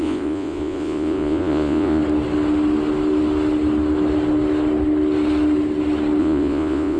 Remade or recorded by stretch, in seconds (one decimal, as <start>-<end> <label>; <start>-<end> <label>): 0.0-2.0 remade; 2.0-6.2 recorded; 6.2-7.0 remade